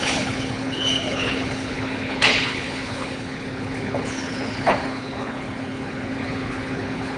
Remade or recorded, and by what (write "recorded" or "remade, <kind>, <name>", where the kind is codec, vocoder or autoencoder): remade, codec, HILCodec